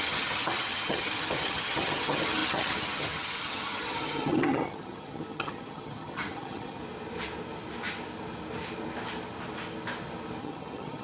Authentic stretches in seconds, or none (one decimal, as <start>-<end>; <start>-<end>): 6.8-10.4